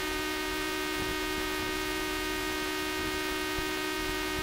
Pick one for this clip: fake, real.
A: fake